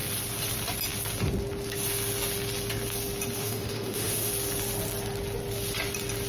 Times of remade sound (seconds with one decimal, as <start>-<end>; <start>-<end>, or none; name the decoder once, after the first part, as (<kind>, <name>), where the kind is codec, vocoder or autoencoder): 3.4-4.3 (autoencoder, DAC-VAE)